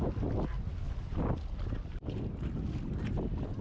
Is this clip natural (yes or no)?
yes